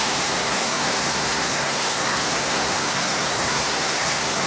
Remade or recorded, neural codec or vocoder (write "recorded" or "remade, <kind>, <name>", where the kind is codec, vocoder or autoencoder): remade, codec, SNAC